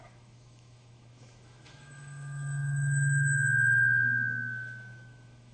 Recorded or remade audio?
remade